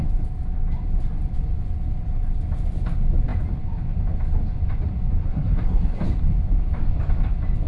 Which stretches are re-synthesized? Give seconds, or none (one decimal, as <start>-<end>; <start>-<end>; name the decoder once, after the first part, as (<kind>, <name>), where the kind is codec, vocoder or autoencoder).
5.3-6.0 (codec, SNAC)